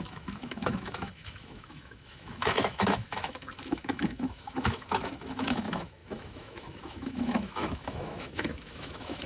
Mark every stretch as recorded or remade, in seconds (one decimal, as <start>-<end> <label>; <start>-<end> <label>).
0.0-9.3 remade